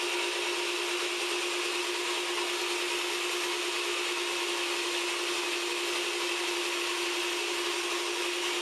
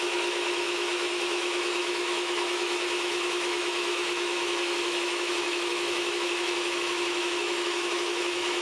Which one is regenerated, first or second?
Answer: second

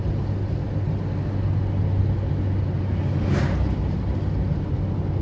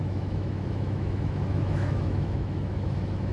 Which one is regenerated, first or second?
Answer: second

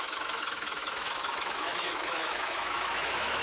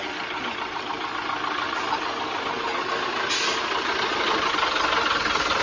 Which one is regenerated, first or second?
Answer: first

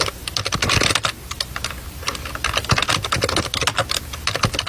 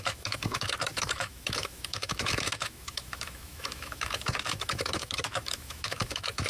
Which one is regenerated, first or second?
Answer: second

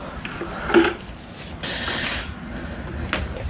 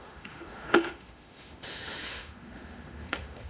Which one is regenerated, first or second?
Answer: second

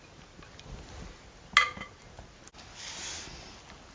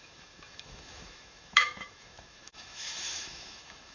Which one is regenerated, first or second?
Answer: second